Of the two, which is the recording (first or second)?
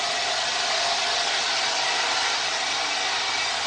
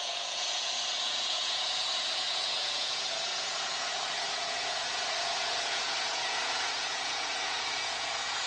first